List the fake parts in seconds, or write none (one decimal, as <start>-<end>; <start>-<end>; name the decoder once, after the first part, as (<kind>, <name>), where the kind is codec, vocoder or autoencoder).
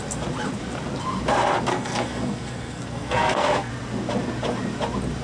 1.7-3.7 (codec, SNAC)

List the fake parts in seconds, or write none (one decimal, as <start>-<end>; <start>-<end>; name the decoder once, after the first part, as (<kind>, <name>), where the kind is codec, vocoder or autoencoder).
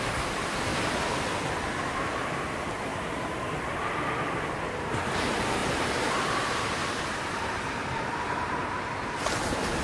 0.0-0.7 (vocoder, BigVGAN v2); 1.7-2.9; 4.7-9.8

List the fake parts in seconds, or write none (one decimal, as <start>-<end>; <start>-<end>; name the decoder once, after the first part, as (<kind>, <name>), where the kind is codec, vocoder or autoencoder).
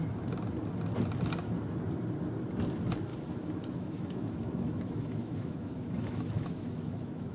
3.1-7.3 (autoencoder, DAC-VAE)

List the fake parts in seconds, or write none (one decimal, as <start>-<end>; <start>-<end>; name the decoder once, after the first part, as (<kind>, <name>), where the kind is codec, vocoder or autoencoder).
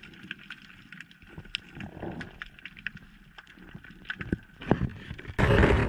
none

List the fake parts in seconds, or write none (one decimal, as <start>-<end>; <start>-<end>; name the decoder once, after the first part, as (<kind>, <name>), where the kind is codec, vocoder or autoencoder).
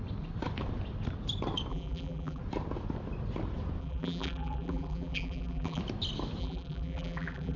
1.7-2.4 (vocoder, BigVGAN v2); 3.8-5.8; 6.4-7.6